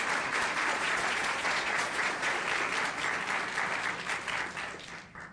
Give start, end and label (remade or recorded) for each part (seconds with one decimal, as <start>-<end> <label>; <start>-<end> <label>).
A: 0.0-0.7 recorded; 0.7-2.4 remade; 2.4-5.3 recorded